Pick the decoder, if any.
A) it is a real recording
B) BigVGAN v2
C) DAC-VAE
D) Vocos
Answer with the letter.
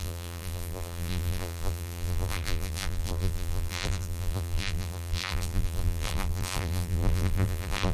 B